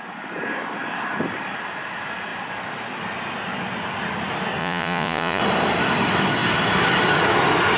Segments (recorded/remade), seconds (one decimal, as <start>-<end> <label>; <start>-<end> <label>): 0.0-4.6 recorded; 4.6-5.4 remade; 5.4-7.8 recorded